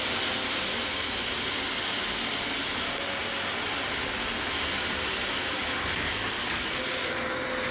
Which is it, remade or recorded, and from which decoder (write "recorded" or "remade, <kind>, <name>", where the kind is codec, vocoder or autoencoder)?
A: recorded